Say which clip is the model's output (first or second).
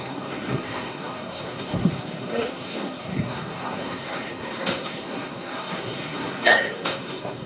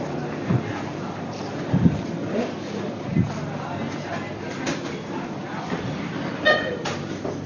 first